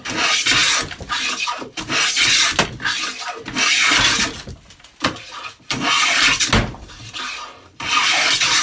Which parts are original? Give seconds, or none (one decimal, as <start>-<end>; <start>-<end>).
0.0-8.6